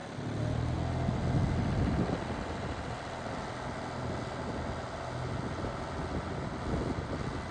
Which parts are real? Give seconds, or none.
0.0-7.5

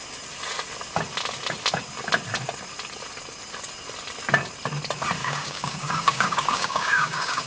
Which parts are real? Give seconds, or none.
0.0-5.2

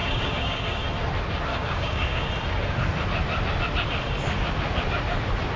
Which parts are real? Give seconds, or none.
0.8-1.5; 2.3-5.6

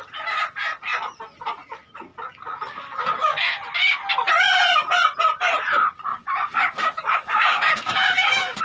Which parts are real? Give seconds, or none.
0.0-6.1

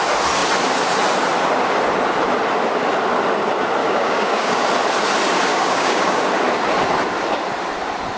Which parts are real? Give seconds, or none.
0.0-3.8; 4.6-5.5; 6.2-8.2

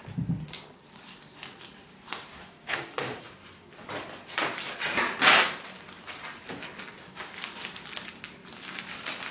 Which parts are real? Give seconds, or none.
0.0-2.4; 3.4-9.3